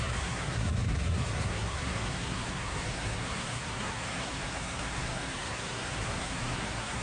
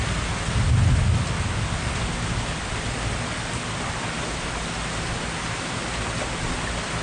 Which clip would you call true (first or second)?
second